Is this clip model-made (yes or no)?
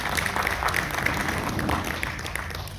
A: no